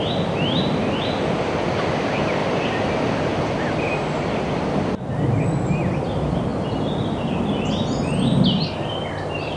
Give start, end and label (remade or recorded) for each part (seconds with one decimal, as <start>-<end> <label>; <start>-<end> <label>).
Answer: 0.0-9.6 recorded